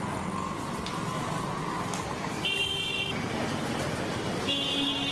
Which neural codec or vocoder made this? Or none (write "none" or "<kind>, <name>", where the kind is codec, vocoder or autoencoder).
none